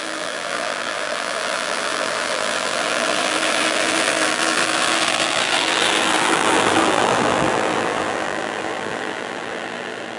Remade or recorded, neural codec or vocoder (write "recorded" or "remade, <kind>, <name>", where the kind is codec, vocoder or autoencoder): remade, vocoder, BigVGAN v2